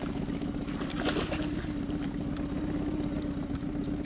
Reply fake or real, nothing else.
real